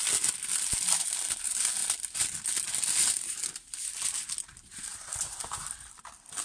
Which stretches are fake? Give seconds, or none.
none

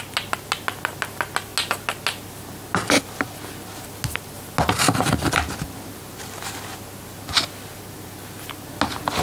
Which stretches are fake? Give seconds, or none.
none

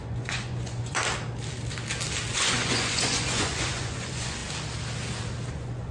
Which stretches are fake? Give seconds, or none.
0.0-1.0 (vocoder, Vocos); 2.3-4.4; 5.5-5.9

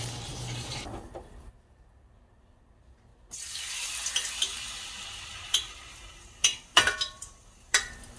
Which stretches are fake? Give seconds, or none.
0.0-3.1 (vocoder, BigVGAN v2); 5.2-8.2